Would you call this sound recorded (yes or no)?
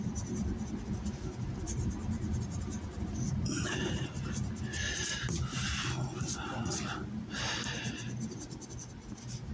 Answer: yes